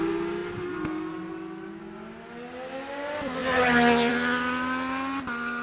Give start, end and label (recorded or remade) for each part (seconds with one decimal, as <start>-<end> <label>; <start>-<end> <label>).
0.0-5.6 recorded